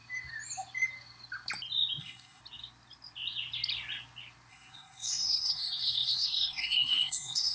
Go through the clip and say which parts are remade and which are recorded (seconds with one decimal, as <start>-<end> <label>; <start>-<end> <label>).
0.0-2.0 recorded; 2.0-2.4 remade; 2.4-4.5 recorded; 4.5-7.5 remade